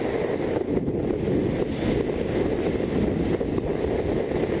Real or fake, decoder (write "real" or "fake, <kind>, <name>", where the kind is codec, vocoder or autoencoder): real